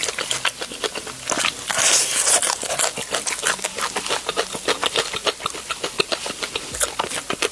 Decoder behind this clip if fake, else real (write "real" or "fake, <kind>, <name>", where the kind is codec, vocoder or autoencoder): real